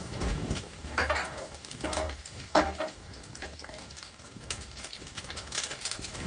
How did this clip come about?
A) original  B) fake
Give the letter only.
B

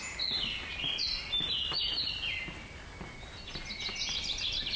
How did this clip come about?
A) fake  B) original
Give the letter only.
B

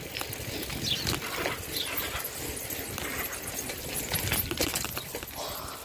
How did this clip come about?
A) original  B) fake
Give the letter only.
A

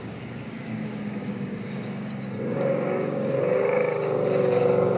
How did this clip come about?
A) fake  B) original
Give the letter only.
A